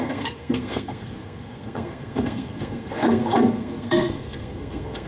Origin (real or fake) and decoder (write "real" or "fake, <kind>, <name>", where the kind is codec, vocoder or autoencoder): fake, codec, SNAC